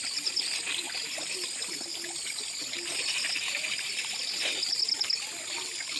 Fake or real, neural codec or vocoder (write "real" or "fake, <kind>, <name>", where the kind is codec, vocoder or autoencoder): real